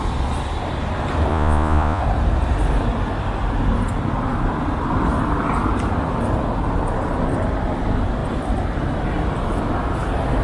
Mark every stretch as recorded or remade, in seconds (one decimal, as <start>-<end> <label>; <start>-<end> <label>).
0.0-1.3 recorded; 1.3-2.0 remade; 2.0-10.4 recorded